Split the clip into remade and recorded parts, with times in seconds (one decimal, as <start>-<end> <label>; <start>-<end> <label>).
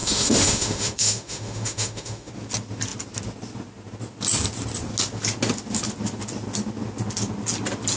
0.0-2.3 remade; 2.3-8.0 recorded